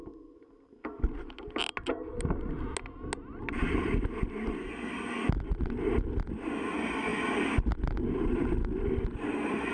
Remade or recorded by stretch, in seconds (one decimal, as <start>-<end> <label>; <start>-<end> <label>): 0.0-9.7 recorded